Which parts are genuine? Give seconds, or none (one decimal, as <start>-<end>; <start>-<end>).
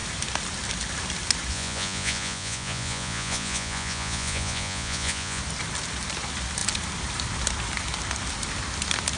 0.0-1.5; 5.4-9.2